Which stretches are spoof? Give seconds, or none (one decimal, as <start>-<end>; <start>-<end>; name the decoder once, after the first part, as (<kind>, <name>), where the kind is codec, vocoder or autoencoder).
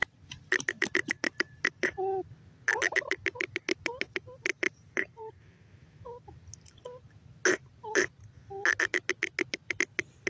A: 4.5-5.7 (vocoder, BigVGAN v2)